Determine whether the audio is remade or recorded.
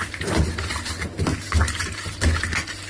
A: recorded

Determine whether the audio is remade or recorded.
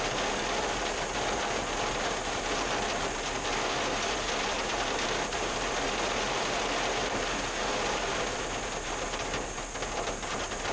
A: recorded